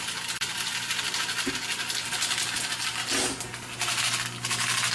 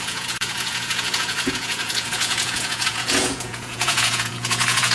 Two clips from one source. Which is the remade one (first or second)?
second